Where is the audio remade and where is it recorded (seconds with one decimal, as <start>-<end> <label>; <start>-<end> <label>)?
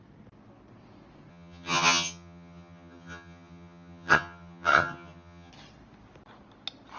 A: 0.0-1.3 recorded; 1.3-5.5 remade; 5.5-7.0 recorded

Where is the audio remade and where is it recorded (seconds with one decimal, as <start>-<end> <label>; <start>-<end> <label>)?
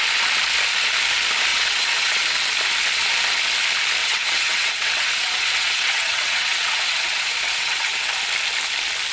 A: 0.0-1.5 recorded; 1.5-2.2 remade; 2.2-4.0 recorded; 4.0-8.1 remade; 8.1-9.1 recorded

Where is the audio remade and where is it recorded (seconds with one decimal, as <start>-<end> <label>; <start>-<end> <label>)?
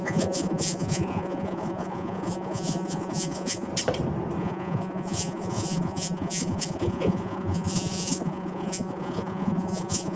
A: 0.0-3.7 remade; 3.7-4.4 recorded; 4.4-10.2 remade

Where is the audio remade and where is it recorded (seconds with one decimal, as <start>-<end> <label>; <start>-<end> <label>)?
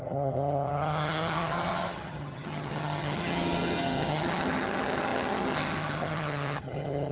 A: 0.0-7.1 remade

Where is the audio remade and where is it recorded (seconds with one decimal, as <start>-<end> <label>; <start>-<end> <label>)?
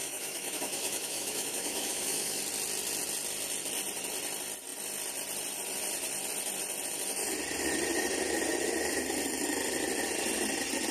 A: 0.0-2.4 remade; 2.4-10.9 recorded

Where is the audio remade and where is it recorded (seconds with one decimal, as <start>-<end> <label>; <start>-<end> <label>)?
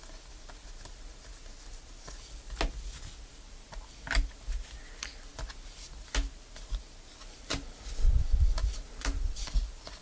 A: 0.0-10.0 recorded